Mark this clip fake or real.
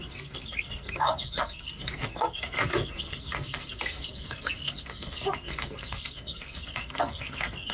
fake